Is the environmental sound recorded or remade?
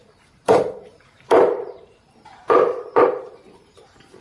remade